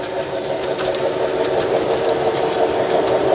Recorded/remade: remade